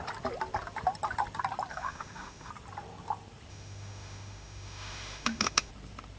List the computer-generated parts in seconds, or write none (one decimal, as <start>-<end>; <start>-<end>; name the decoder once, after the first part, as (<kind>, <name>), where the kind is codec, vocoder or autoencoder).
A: 1.7-2.5 (autoencoder, DAC-VAE); 3.5-5.7